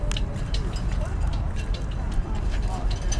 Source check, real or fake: real